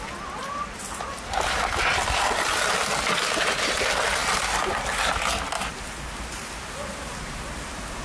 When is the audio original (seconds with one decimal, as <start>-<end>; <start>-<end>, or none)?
0.0-8.0